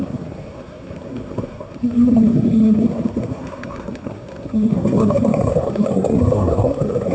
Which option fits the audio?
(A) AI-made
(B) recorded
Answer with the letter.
A